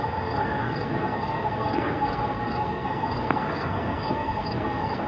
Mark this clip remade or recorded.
remade